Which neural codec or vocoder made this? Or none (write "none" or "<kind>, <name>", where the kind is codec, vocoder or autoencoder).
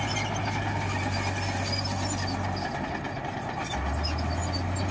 none